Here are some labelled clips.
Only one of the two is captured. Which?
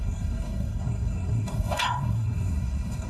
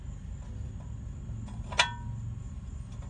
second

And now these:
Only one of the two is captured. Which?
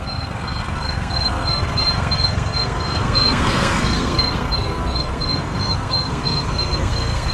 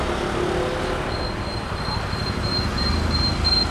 second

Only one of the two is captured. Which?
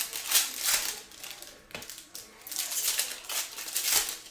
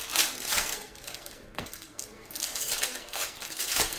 first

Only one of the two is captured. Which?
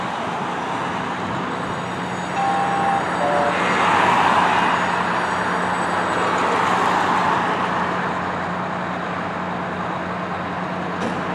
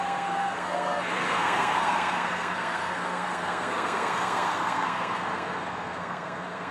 first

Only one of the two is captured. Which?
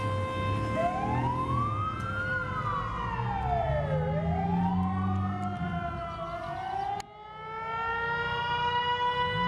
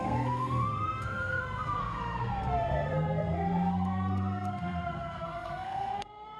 first